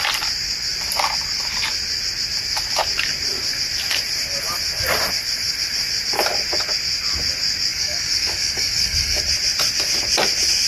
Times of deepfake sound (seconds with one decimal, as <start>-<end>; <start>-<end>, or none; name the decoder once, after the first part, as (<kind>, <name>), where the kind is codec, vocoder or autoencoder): 7.7-9.2 (codec, DAC)

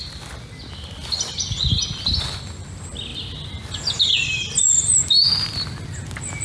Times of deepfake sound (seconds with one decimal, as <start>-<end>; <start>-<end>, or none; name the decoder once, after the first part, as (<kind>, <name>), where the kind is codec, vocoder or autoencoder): none

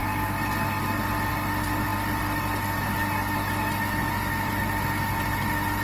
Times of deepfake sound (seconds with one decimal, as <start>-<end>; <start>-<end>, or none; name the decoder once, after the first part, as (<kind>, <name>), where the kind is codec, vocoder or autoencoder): none

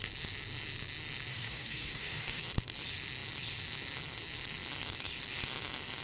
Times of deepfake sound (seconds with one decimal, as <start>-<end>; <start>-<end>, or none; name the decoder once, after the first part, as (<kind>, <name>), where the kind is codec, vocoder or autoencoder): 1.3-2.4 (codec, DAC)